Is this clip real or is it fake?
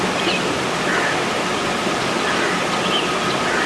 real